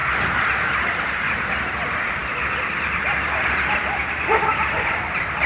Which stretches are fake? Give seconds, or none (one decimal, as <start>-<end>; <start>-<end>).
none